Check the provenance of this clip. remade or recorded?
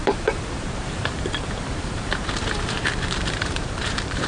remade